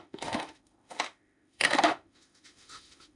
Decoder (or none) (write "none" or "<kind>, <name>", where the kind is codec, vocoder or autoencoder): autoencoder, DAC-VAE